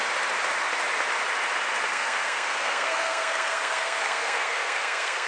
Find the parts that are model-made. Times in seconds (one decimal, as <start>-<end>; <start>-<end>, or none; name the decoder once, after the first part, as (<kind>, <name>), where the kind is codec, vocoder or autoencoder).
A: 1.9-5.3 (codec, SNAC)